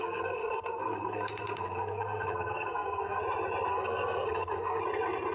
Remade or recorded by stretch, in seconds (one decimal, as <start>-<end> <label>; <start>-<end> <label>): 0.0-3.2 remade; 3.2-3.7 recorded; 3.7-4.8 remade; 4.8-5.3 recorded